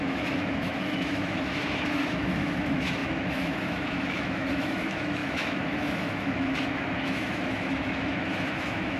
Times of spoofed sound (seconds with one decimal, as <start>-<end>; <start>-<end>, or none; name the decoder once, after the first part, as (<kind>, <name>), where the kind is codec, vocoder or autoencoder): 0.0-9.0 (autoencoder, DAC-VAE)

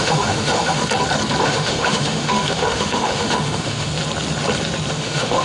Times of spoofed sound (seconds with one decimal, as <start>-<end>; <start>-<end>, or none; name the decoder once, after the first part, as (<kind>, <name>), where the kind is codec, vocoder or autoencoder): 0.0-0.8 (autoencoder, DAC-VAE); 1.4-3.9; 4.9-5.4

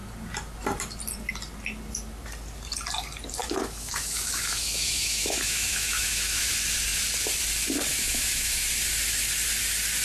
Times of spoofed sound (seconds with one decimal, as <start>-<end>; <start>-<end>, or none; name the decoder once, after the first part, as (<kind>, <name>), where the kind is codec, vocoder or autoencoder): 3.4-6.5 (autoencoder, DAC-VAE); 7.9-8.6

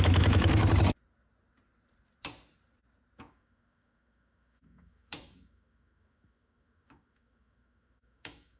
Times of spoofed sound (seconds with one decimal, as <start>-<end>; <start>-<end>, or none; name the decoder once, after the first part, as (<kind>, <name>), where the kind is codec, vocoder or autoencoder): 0.0-0.6 (autoencoder, DAC-VAE); 3.2-8.6

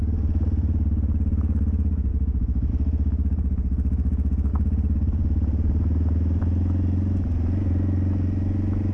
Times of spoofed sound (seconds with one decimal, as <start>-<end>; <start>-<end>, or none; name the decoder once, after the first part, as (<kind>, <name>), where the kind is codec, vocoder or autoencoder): 2.1-2.7 (autoencoder, DAC-VAE)

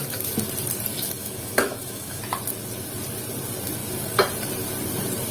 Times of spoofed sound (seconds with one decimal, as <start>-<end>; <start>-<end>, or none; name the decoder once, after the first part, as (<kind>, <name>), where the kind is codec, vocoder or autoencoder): 0.9-2.2 (autoencoder, DAC-VAE)

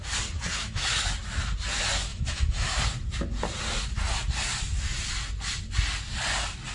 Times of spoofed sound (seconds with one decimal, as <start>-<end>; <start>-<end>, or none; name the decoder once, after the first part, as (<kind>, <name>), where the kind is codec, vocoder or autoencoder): 0.5-1.1 (autoencoder, DAC-VAE); 2.1-2.8